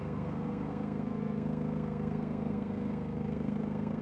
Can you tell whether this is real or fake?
fake